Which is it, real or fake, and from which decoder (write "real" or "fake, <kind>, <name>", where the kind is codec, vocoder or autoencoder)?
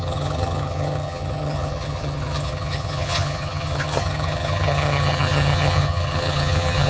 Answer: fake, vocoder, HiFi-GAN